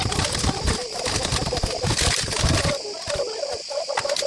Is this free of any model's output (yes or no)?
yes